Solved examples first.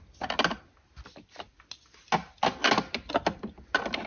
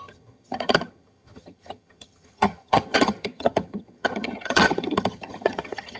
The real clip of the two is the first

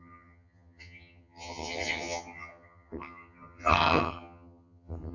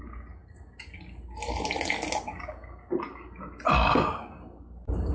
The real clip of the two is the second